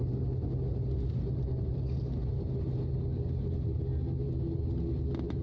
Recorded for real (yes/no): yes